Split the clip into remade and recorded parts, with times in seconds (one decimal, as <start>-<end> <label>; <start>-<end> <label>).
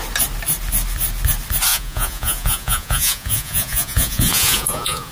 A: 0.0-1.7 recorded; 1.7-5.1 remade